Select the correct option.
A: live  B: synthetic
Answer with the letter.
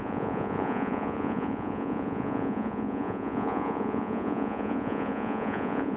B